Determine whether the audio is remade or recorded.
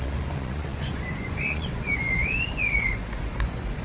remade